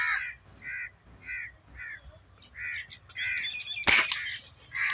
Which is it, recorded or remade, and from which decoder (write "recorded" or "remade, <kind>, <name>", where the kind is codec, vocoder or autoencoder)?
recorded